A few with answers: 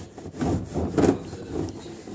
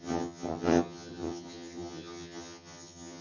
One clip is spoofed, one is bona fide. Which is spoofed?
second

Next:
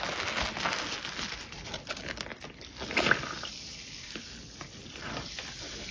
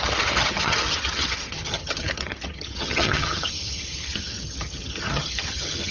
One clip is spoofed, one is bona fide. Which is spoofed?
second